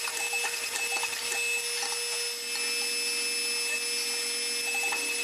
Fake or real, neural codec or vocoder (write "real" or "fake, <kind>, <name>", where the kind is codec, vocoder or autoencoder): real